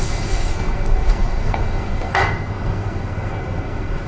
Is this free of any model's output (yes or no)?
no